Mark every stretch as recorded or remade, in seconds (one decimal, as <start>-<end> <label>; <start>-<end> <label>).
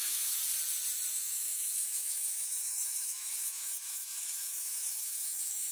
0.0-0.4 remade; 0.4-1.1 recorded; 1.1-5.7 remade